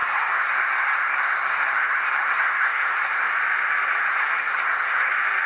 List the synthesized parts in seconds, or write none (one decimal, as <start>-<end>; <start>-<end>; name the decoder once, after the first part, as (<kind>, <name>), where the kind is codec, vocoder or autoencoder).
0.0-3.3 (codec, SNAC); 4.1-5.1